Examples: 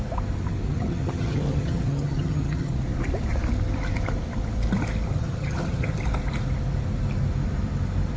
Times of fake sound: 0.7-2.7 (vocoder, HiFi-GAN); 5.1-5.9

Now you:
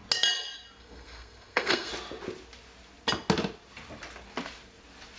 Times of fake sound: 0.8-1.9 (codec, SNAC)

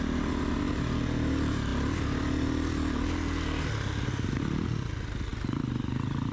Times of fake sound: none

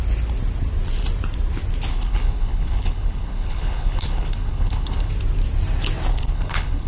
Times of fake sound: 1.9-5.1 (codec, HILCodec); 6.1-6.9

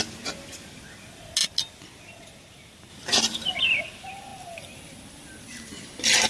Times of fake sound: none

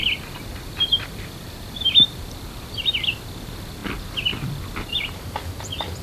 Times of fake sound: 0.9-6.0 (vocoder, BigVGAN v2)